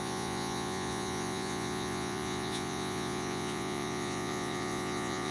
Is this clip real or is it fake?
fake